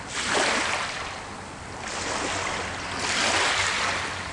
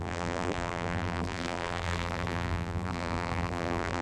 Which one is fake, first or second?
second